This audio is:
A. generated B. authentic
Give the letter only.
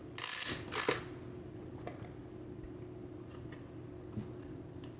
B